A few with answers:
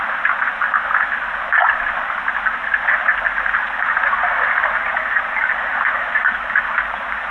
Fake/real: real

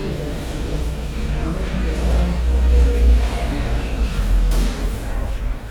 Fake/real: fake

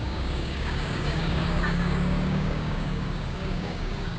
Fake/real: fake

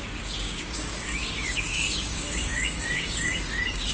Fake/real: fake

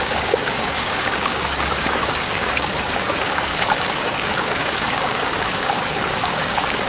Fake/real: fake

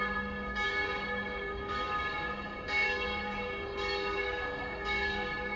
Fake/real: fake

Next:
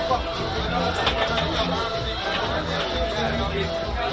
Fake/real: real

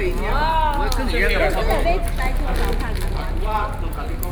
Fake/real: real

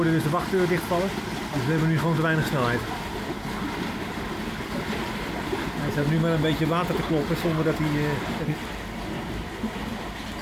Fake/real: real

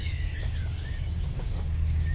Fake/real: fake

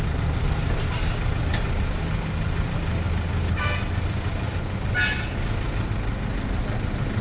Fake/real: real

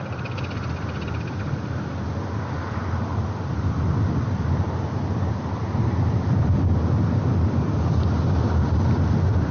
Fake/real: real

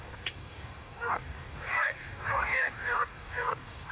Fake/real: fake